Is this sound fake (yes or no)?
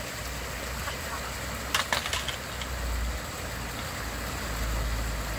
no